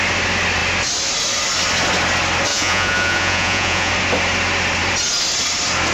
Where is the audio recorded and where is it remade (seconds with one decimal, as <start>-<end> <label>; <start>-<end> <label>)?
0.0-2.5 recorded; 2.5-3.9 remade; 3.9-5.9 recorded

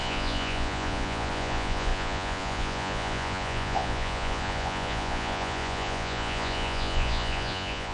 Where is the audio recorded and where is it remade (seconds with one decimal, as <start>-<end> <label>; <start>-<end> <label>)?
0.0-7.9 remade

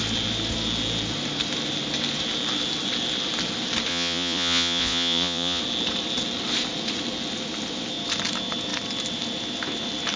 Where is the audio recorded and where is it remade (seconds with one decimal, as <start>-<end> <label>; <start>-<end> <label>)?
0.0-3.9 recorded; 3.9-5.6 remade; 5.6-10.2 recorded

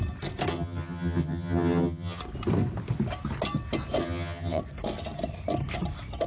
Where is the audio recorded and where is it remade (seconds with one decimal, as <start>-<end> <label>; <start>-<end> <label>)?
0.0-0.5 recorded; 0.5-2.2 remade; 2.2-4.0 recorded; 4.0-4.6 remade; 4.6-6.3 recorded

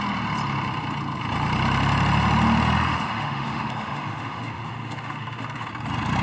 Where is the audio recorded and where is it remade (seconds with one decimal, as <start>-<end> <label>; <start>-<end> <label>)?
0.0-2.9 recorded; 2.9-5.7 remade; 5.7-6.2 recorded

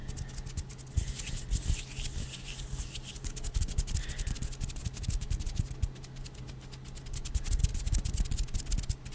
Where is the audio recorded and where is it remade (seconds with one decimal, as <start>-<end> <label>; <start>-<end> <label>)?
0.0-9.1 recorded